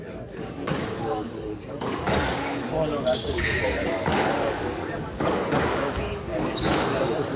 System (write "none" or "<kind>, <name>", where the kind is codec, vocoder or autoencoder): codec, DAC